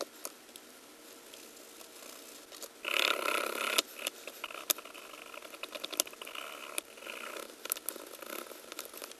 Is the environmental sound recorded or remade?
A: recorded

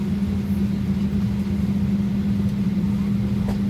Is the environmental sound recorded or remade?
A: recorded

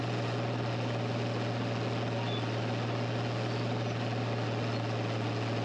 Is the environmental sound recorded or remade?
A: recorded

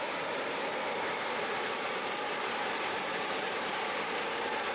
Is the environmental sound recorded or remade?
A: remade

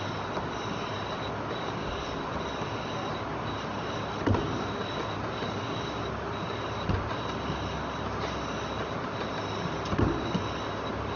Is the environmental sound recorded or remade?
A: recorded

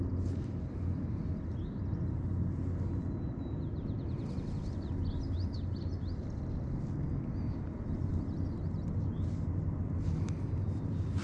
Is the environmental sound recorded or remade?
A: recorded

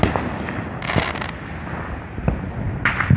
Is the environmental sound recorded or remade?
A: recorded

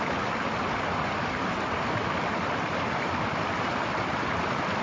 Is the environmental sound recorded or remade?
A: remade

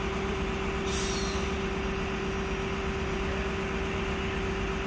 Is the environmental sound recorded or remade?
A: recorded